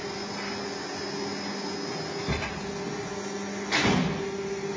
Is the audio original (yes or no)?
yes